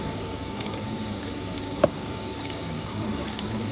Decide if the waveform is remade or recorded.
remade